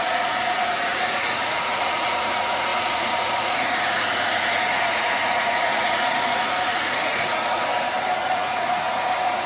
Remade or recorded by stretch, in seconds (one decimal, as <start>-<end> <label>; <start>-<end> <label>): 0.0-7.7 remade; 7.7-8.3 recorded; 8.3-9.5 remade